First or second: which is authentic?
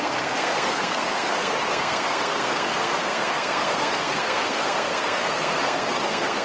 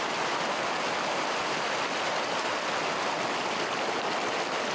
second